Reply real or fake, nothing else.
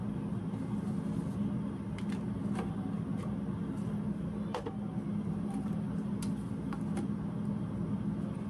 real